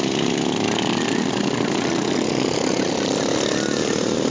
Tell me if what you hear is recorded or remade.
recorded